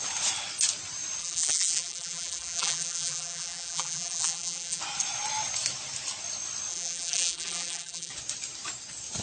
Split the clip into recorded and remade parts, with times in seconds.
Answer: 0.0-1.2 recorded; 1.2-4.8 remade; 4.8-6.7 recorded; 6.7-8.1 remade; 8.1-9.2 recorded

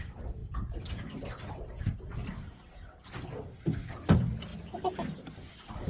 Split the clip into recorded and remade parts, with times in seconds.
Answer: 0.0-5.9 recorded

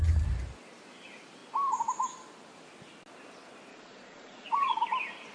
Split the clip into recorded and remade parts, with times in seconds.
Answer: 0.0-3.7 recorded; 3.7-4.8 remade; 4.8-5.3 recorded

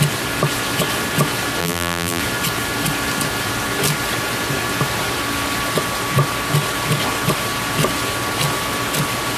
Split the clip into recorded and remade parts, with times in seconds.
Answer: 0.0-1.6 recorded; 1.6-2.2 remade; 2.2-9.4 recorded

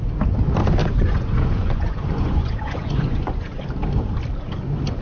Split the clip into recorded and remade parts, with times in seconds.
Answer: 0.0-0.8 recorded; 0.8-3.6 remade; 3.6-5.0 recorded